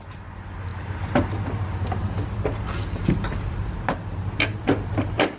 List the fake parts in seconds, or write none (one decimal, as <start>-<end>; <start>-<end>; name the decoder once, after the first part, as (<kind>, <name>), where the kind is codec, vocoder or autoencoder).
none